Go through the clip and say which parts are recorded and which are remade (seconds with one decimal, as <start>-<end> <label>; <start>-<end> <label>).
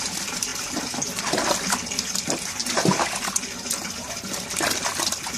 0.0-5.4 recorded